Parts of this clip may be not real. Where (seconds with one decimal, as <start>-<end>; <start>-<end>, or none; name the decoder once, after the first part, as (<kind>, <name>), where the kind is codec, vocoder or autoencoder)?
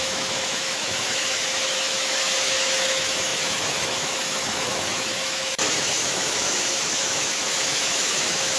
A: 0.0-8.6 (autoencoder, DAC-VAE)